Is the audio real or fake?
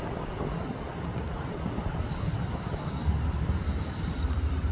fake